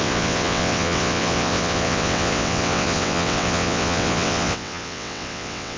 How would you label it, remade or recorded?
remade